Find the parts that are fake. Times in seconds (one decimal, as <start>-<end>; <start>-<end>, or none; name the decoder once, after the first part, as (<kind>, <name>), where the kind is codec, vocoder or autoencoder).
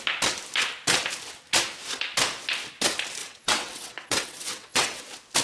3.2-5.0 (vocoder, WaveNeXt)